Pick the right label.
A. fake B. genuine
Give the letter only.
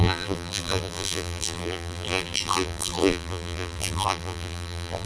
A